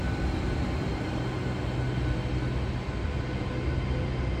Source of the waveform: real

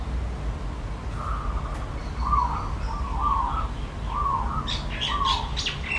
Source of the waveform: real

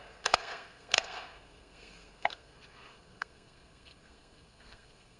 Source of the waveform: fake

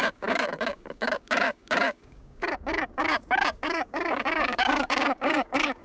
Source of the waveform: fake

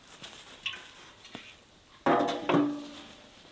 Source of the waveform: real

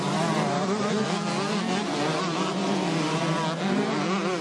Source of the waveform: real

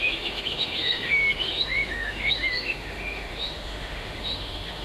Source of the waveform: fake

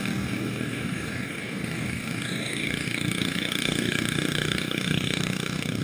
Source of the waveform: fake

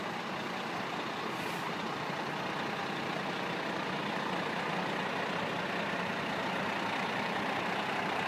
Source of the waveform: real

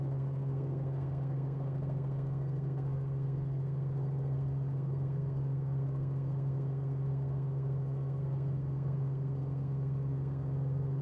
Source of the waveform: fake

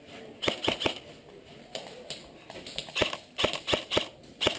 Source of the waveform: real